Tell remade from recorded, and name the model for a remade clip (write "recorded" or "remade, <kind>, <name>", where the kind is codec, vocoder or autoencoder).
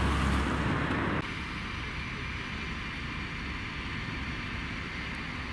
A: recorded